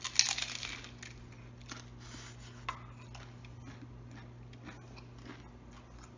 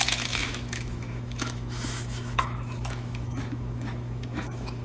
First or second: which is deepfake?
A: second